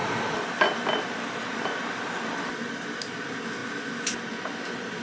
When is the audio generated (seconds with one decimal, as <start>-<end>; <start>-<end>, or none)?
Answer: 0.0-3.0